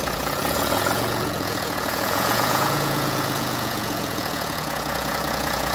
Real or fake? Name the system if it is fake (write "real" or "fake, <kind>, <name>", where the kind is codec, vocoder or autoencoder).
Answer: fake, vocoder, Vocos